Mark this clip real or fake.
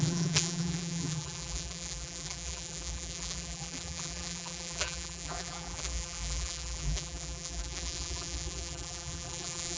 fake